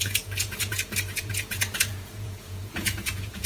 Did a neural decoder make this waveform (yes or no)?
yes